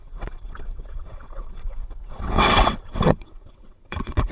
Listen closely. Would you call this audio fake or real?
fake